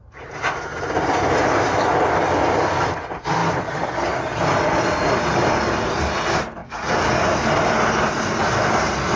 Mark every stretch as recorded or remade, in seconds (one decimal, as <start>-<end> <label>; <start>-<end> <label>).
0.0-9.2 recorded